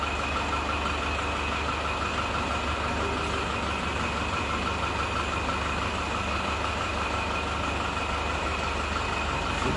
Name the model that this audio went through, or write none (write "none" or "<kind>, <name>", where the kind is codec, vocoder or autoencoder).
none